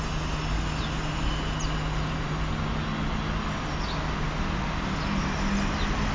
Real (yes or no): yes